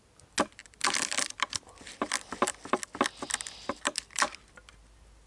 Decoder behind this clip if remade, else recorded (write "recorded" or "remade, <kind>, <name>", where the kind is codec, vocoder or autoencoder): recorded